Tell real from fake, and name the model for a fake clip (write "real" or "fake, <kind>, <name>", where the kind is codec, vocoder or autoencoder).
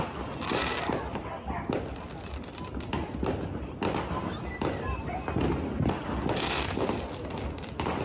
real